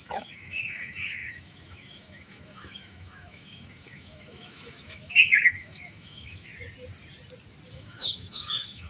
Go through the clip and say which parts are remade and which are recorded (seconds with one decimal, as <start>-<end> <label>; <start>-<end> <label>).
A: 0.0-6.5 remade; 6.5-7.7 recorded; 7.7-8.9 remade